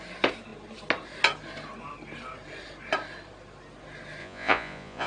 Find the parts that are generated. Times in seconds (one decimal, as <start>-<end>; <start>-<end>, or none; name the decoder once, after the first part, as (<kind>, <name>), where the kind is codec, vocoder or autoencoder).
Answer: 4.2-5.1 (vocoder, Vocos)